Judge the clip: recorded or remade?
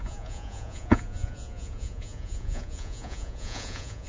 remade